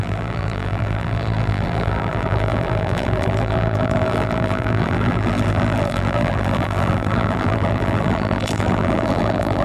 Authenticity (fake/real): fake